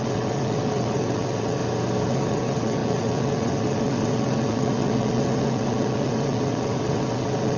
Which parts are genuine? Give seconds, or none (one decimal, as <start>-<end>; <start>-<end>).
1.6-2.1